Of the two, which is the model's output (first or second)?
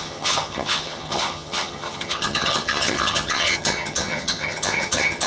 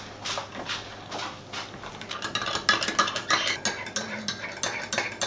first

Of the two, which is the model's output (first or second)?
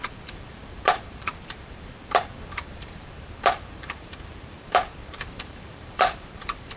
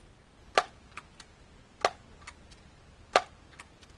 first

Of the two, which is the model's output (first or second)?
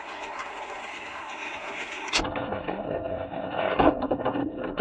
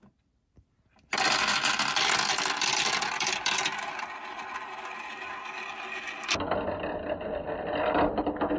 first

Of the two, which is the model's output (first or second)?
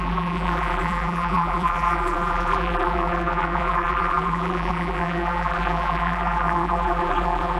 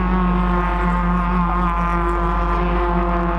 first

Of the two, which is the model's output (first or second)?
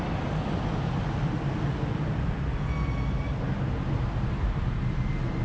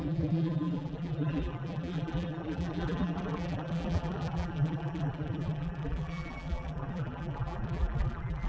second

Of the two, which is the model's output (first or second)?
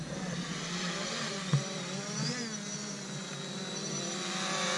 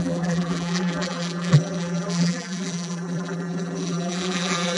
second